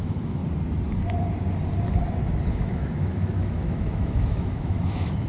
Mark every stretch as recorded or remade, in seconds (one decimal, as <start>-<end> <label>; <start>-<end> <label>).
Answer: 0.0-0.4 remade; 0.4-2.5 recorded; 2.5-5.3 remade